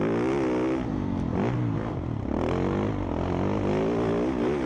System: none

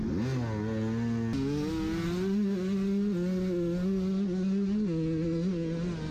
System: none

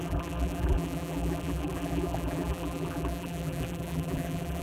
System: vocoder, BigVGAN v2